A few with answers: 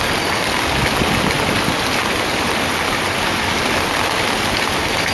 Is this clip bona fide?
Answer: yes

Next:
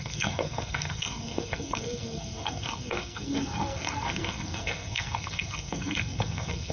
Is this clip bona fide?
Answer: no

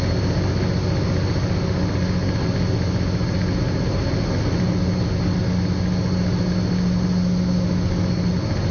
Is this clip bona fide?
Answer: yes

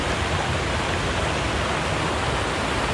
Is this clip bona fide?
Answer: yes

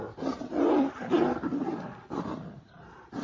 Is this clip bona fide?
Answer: yes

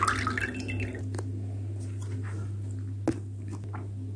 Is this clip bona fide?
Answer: yes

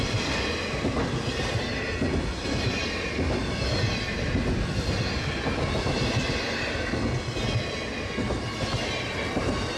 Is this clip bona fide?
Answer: yes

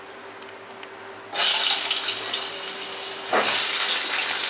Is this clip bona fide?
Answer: yes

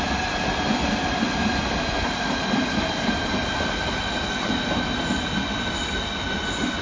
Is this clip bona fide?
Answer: yes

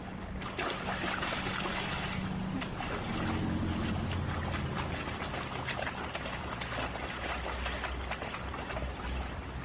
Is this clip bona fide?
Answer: yes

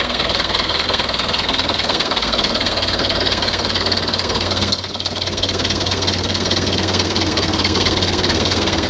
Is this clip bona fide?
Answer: no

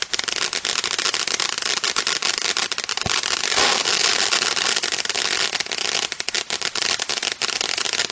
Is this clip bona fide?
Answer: yes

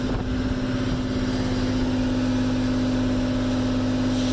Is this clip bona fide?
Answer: yes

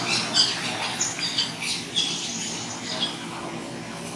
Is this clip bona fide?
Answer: yes